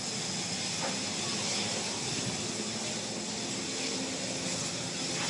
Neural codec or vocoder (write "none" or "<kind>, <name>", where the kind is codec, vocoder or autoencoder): none